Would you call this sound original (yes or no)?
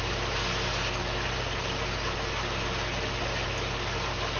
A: yes